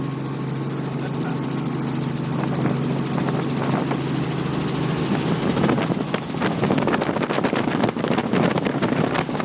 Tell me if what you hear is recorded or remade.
recorded